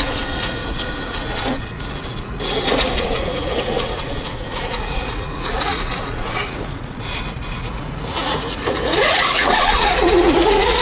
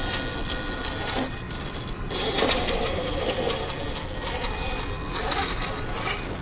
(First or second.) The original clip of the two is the second